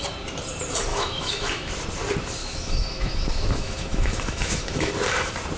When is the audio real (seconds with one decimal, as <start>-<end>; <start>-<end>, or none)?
0.0-0.9; 1.7-2.4; 4.9-5.6

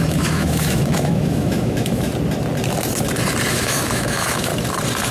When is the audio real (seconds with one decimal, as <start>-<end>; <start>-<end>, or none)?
2.1-3.5; 4.5-5.1

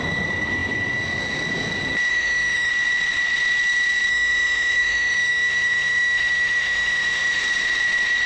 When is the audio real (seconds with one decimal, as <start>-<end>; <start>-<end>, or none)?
0.0-2.1; 2.7-4.1; 7.4-8.3

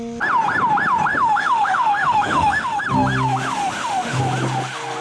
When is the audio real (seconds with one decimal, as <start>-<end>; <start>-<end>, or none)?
0.0-1.1; 2.8-3.6; 4.2-5.0

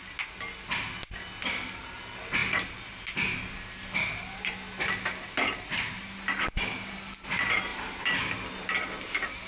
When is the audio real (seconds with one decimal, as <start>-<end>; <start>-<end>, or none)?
0.0-9.5

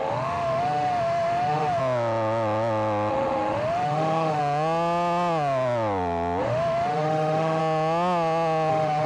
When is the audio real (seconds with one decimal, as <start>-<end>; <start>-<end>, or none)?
1.8-3.1; 4.4-6.4; 7.6-8.7

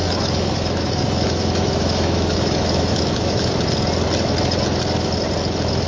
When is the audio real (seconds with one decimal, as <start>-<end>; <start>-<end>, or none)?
3.5-5.9